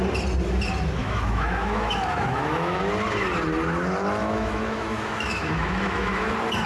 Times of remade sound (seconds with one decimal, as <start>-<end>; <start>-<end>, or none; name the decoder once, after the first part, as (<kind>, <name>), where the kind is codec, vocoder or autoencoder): 1.0-2.8 (autoencoder, DAC-VAE); 4.2-6.3